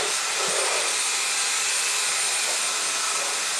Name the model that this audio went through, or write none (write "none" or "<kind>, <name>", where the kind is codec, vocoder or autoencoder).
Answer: none